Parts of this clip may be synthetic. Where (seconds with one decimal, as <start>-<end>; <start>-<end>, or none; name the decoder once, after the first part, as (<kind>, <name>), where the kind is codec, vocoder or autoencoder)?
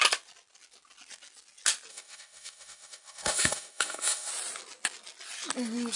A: 1.9-4.3 (autoencoder, DAC-VAE)